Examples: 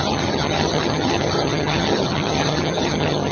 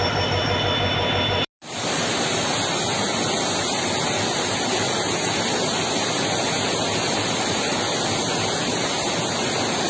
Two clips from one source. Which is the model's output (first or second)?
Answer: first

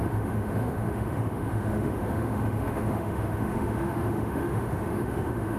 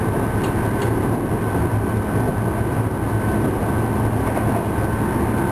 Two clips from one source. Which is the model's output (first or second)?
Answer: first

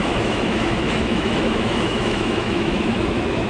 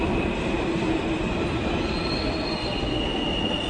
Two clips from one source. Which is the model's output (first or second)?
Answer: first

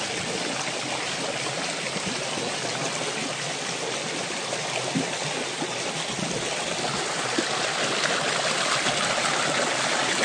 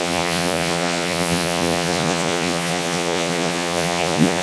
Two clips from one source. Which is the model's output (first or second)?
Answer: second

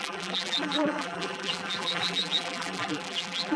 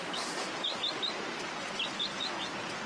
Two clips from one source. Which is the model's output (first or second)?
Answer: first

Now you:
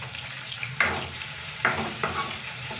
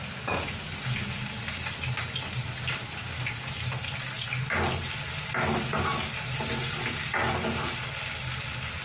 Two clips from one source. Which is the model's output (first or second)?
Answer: first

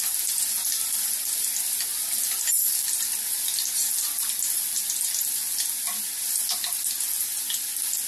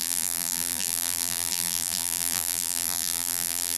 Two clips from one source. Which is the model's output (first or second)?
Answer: second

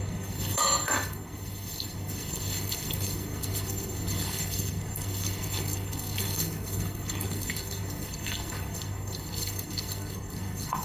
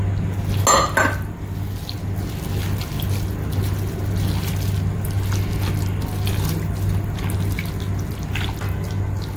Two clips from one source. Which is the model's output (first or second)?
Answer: first